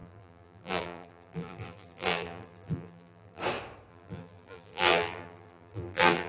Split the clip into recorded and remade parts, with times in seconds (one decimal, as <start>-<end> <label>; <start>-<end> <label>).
0.0-3.4 remade; 3.4-3.9 recorded; 3.9-6.3 remade